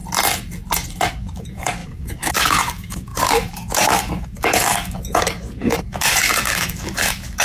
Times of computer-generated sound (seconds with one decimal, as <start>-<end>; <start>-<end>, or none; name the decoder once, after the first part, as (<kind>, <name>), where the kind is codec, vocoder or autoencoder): 1.1-7.4 (codec, DAC)